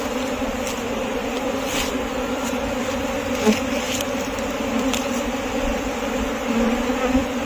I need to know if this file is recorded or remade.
remade